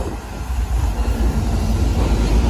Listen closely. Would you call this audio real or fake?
real